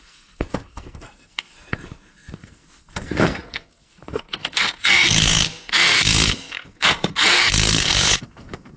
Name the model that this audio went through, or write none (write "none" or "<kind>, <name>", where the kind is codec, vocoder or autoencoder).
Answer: codec, SNAC